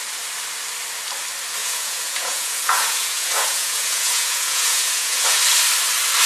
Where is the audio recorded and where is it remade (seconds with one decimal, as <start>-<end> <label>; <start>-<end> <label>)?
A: 0.0-1.6 recorded; 1.6-5.4 remade; 5.4-6.3 recorded